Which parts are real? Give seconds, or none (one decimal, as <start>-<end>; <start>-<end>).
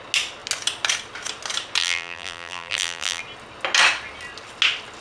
0.0-1.8; 3.2-5.0